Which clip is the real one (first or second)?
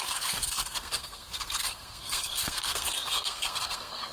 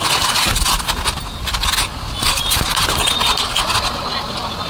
second